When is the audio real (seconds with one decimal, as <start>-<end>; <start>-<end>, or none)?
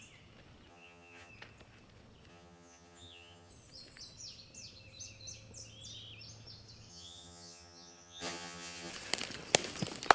0.0-0.7; 1.3-2.3; 3.5-6.9; 8.9-10.1